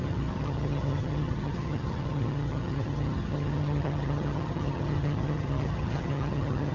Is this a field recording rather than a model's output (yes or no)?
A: no